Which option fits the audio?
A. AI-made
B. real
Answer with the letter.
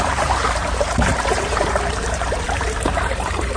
A